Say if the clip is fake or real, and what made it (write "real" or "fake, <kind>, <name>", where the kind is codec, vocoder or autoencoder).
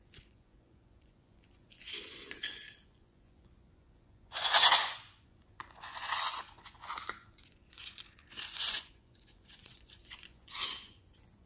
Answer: fake, vocoder, Vocos